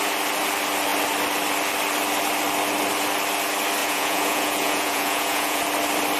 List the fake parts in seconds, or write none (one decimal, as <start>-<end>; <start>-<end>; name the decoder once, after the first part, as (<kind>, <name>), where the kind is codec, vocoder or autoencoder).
3.8-5.6 (vocoder, Vocos)